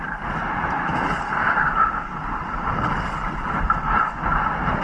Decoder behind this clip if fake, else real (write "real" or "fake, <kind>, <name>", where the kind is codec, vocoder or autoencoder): real